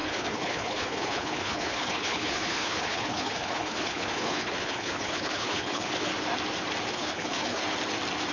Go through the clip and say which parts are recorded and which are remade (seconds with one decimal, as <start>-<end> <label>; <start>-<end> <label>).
0.0-6.1 remade; 6.1-6.9 recorded; 6.9-7.6 remade; 7.6-8.3 recorded